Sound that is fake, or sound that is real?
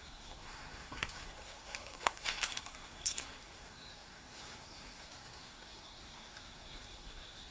fake